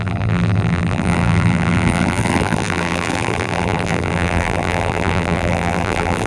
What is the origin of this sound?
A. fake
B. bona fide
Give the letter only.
A